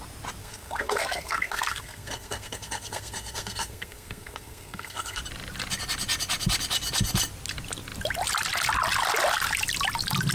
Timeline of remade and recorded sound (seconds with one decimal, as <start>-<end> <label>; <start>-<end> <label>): 0.0-0.4 recorded; 0.4-5.2 remade; 5.2-10.3 recorded